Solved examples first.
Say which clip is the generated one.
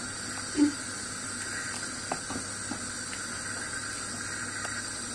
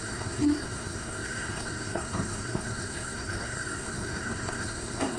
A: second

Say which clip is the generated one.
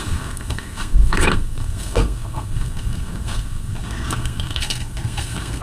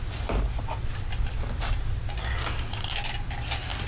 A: first